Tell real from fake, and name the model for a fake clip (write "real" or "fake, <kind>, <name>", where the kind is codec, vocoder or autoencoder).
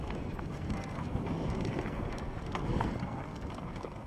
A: fake, codec, SNAC